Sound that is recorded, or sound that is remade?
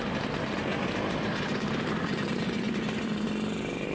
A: recorded